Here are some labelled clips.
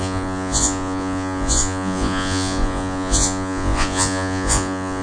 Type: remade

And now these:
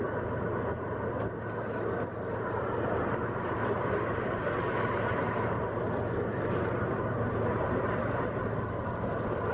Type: recorded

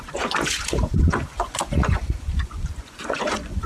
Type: remade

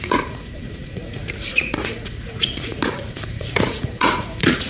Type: remade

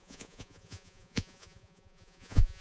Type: remade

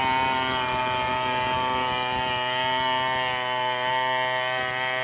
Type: recorded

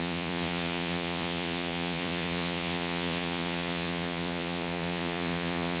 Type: remade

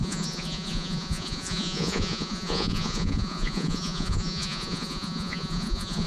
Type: remade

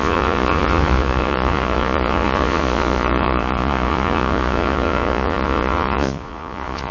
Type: remade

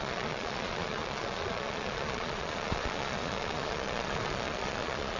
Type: remade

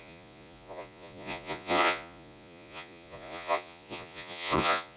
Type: remade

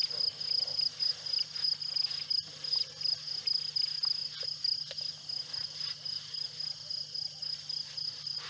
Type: recorded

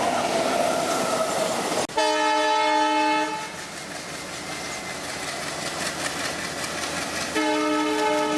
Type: recorded